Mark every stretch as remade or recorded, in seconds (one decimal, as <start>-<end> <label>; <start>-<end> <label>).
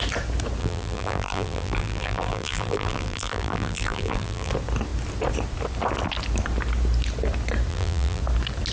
0.0-0.6 recorded; 0.6-4.5 remade; 4.5-7.7 recorded; 7.7-8.2 remade; 8.2-8.7 recorded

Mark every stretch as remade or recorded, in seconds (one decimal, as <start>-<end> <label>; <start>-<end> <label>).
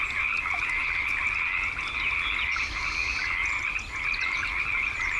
0.0-5.2 recorded